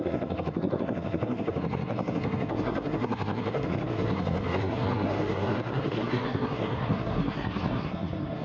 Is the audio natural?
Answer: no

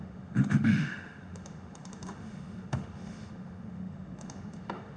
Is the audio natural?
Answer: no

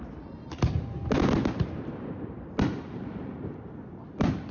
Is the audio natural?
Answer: yes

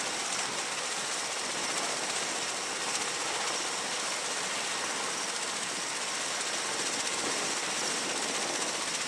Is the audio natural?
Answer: yes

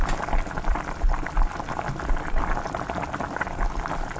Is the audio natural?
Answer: yes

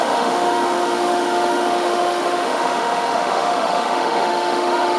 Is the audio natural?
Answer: no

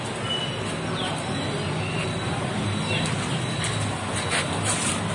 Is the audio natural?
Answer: yes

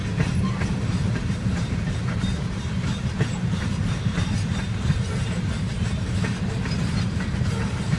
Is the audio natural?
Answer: no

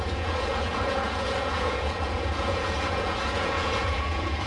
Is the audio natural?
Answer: no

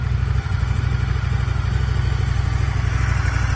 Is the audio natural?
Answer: yes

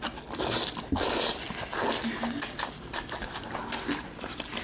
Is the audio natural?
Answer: yes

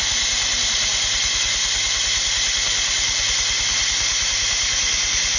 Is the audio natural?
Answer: yes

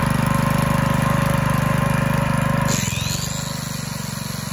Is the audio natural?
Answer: yes